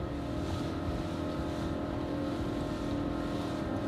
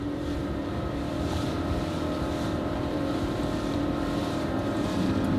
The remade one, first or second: second